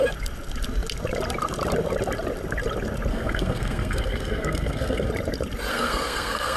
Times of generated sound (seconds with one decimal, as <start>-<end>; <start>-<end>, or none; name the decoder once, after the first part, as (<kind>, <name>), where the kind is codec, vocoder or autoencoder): 3.1-5.1 (codec, SNAC); 5.7-6.6